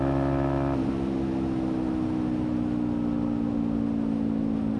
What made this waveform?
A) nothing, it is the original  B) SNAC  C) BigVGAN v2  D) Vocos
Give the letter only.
A